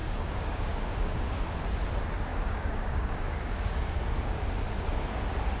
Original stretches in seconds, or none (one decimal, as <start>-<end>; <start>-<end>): 1.4-2.3; 4.5-5.6